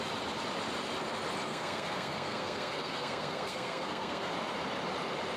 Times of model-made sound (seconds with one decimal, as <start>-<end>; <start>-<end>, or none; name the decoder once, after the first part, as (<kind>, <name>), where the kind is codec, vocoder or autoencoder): 1.5-4.3 (codec, SNAC)